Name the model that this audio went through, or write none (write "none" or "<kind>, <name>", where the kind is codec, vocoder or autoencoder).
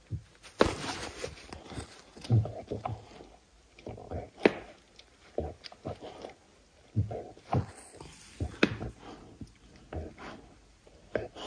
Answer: none